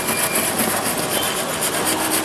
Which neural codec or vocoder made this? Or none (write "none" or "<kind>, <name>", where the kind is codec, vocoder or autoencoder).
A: none